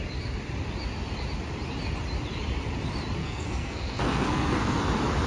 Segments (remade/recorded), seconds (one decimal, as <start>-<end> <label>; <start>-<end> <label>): 0.0-3.2 recorded; 3.2-4.8 remade; 4.8-5.3 recorded